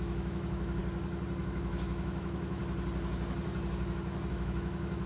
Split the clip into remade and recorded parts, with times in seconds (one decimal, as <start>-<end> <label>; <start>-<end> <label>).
0.0-0.8 remade; 0.8-1.4 recorded; 1.4-2.6 remade; 2.6-4.3 recorded; 4.3-5.1 remade